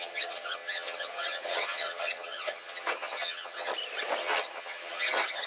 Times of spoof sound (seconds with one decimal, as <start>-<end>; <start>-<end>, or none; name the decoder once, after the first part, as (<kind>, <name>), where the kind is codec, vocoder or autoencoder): 0.0-3.7 (vocoder, HiFi-GAN); 4.2-5.5